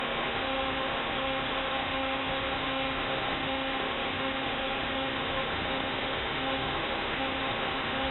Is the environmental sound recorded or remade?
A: remade